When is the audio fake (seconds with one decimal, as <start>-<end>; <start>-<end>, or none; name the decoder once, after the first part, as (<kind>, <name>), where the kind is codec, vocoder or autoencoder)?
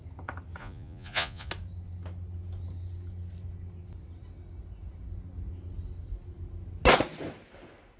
0.6-1.5 (vocoder, Vocos)